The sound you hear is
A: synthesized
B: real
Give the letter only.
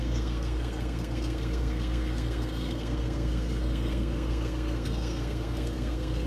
A